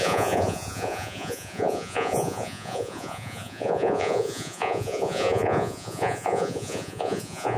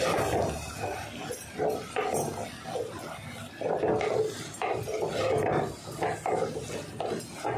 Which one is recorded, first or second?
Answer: second